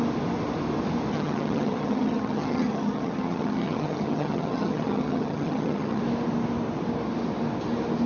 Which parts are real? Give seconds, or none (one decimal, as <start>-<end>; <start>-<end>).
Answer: 0.0-1.1; 6.0-8.1